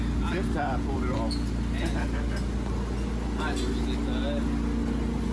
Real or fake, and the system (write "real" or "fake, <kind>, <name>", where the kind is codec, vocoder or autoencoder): real